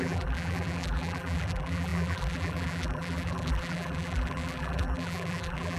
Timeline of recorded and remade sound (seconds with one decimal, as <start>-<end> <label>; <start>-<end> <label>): 0.0-5.8 remade